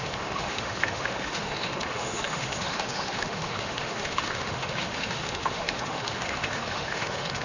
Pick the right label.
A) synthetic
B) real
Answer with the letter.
A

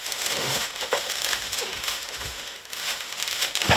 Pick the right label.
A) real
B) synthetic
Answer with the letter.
B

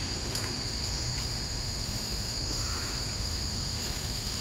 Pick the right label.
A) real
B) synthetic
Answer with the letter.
B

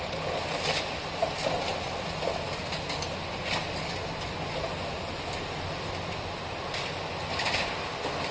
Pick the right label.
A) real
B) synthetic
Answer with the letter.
A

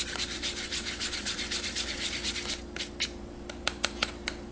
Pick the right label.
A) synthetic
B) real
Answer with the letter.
B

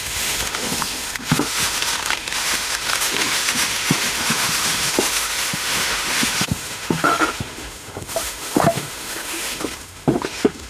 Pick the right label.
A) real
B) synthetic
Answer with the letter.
B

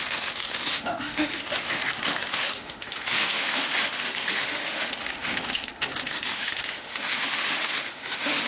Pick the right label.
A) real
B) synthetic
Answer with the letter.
B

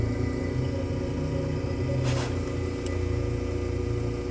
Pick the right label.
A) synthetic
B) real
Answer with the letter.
B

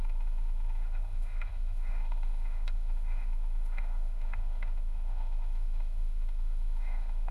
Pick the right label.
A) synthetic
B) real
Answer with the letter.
A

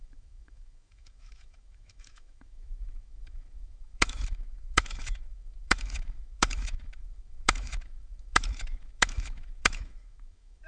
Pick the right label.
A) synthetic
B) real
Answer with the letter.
A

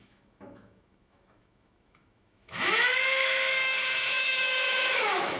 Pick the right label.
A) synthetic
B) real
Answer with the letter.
A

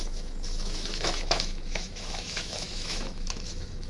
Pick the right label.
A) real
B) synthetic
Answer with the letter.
B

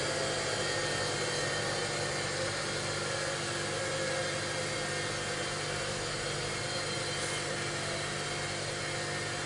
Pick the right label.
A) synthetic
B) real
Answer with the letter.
B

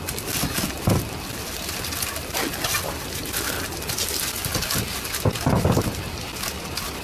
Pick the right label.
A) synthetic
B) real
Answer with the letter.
B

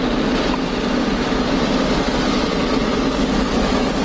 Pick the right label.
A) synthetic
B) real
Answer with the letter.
B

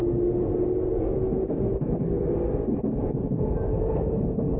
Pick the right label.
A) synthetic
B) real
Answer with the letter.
B